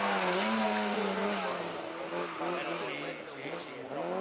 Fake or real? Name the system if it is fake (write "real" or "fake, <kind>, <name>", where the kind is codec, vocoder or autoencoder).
real